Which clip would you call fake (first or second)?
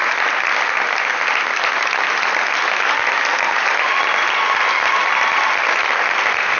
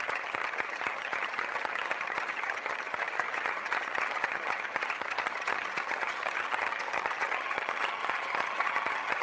second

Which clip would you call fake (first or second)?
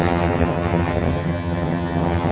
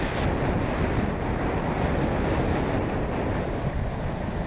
first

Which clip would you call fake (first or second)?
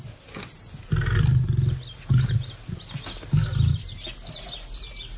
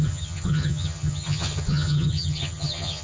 second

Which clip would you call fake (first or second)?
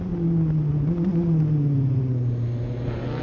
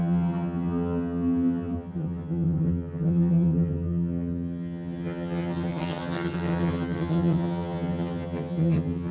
second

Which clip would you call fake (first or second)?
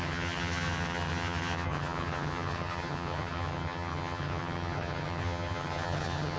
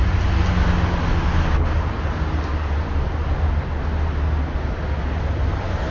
first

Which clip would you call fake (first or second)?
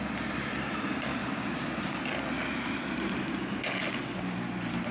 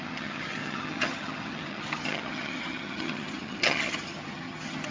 second